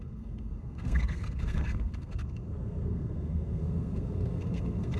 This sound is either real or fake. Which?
fake